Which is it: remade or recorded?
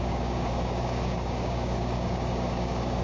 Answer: remade